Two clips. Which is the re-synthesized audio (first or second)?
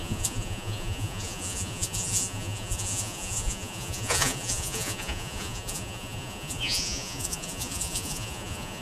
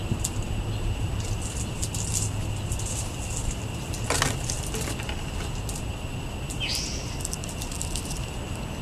first